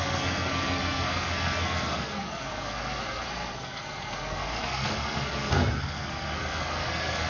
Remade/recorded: remade